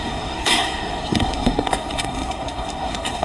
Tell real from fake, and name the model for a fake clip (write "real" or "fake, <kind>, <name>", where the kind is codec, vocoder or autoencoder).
fake, codec, SNAC